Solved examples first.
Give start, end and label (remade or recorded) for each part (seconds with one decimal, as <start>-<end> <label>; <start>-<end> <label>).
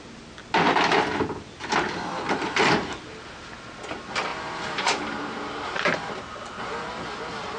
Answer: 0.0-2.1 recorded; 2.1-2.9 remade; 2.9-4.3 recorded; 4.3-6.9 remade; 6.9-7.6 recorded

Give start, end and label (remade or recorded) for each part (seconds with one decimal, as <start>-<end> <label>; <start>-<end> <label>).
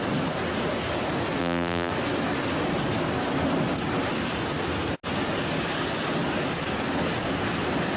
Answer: 0.0-1.4 recorded; 1.4-1.9 remade; 1.9-8.0 recorded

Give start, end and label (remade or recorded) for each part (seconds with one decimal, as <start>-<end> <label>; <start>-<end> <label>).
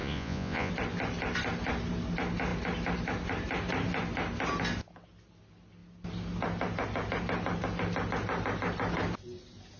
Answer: 0.0-0.7 remade; 0.7-9.8 recorded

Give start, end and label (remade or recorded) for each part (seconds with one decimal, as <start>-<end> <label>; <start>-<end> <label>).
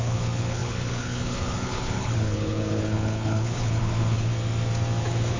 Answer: 0.0-4.3 remade; 4.3-5.0 recorded; 5.0-5.4 remade